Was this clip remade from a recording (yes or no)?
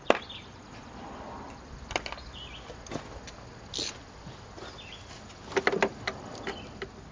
no